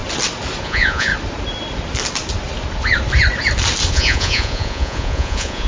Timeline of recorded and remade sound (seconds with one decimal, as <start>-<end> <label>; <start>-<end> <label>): 0.0-0.6 recorded; 0.6-1.1 remade; 1.1-3.9 recorded; 3.9-5.7 remade